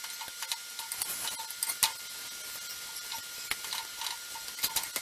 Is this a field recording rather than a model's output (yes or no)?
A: yes